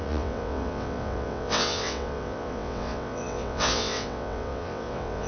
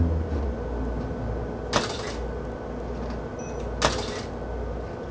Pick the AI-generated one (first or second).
first